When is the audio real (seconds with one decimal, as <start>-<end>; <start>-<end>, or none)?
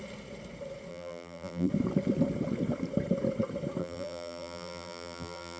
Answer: 0.0-0.9; 1.7-3.8